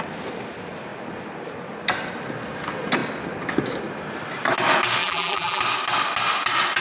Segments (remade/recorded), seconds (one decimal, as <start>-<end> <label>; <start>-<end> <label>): 0.0-5.0 recorded; 5.0-5.6 remade; 5.6-6.8 recorded